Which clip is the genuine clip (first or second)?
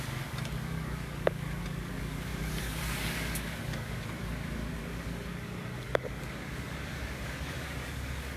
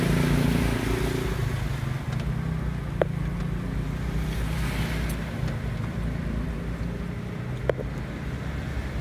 second